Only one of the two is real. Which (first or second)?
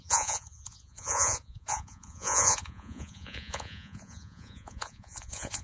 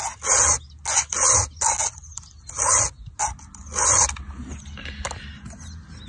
second